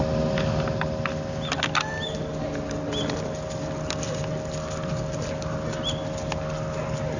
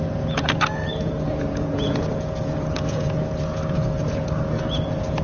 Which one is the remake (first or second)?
second